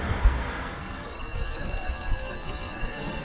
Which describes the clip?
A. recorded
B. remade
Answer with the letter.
B